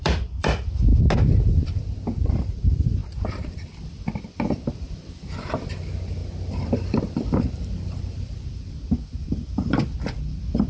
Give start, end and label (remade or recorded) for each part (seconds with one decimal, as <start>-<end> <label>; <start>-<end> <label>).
0.0-0.9 remade; 0.9-2.3 recorded; 2.3-10.7 remade